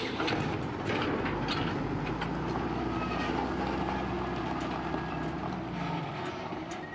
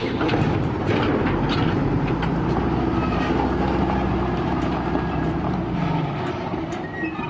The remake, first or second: second